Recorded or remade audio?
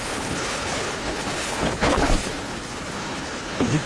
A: remade